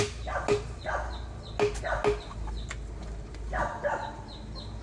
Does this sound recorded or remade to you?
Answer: recorded